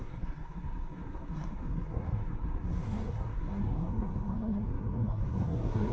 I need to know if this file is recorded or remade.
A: remade